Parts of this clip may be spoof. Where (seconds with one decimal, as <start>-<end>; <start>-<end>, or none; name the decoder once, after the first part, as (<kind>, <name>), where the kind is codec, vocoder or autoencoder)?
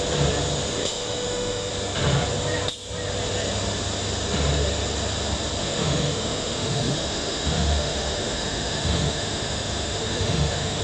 0.7-1.7 (autoencoder, DAC-VAE); 5.6-10.8